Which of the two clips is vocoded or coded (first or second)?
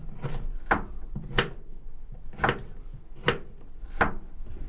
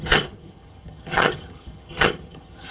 second